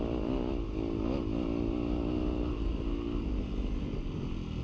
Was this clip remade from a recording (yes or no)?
no